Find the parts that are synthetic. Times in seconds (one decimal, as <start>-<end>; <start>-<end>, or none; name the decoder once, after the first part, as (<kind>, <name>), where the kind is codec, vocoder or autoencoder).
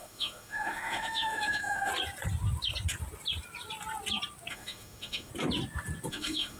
0.0-1.9 (autoencoder, DAC-VAE); 4.5-5.3; 6.1-6.6